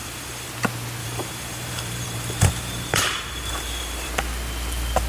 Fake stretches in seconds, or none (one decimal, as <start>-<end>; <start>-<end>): 0.0-0.5; 1.0-4.1